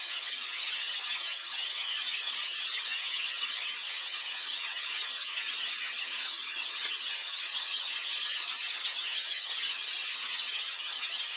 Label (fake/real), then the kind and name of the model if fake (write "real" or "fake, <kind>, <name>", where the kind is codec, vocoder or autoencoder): fake, vocoder, HiFi-GAN